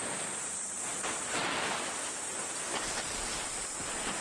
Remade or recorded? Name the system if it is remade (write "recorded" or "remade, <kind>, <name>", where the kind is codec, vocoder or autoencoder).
remade, vocoder, BigVGAN v2